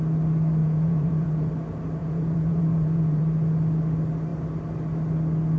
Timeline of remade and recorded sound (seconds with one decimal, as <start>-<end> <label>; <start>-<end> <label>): 0.0-0.6 recorded; 0.6-1.5 remade; 1.5-2.0 recorded; 2.0-3.2 remade; 3.2-5.6 recorded